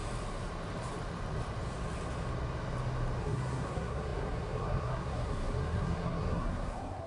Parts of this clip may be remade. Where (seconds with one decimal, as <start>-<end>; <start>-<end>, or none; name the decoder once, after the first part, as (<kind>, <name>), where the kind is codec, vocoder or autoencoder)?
3.2-7.1 (codec, SNAC)

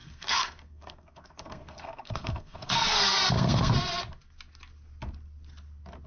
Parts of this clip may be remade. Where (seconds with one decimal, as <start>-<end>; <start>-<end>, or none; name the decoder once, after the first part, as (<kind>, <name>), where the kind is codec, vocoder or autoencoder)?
0.0-3.7 (codec, SNAC)

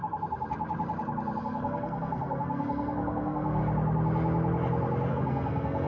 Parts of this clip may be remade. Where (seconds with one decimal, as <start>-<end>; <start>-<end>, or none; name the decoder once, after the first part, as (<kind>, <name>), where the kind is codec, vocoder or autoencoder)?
1.4-3.6 (codec, SNAC); 5.1-5.9

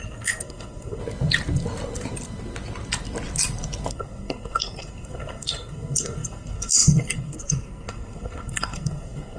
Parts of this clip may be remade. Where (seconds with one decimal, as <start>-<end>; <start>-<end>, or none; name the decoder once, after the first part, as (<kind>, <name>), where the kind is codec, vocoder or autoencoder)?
0.0-1.0 (codec, SNAC); 3.9-9.4

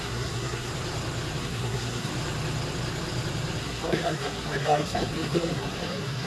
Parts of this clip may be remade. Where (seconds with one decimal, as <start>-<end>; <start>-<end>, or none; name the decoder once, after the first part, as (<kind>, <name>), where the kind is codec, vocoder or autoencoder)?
0.0-0.7 (codec, SNAC); 1.4-2.1; 3.6-6.3